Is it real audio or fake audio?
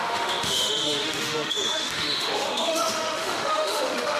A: fake